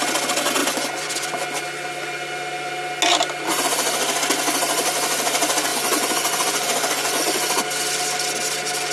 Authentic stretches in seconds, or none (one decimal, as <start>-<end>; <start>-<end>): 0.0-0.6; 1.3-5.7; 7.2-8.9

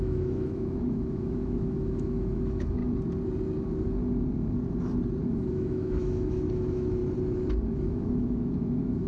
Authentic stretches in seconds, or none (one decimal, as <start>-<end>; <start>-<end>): 2.8-5.2; 7.0-7.7

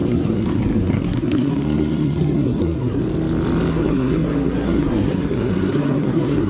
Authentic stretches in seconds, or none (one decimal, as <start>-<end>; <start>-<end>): 3.0-3.7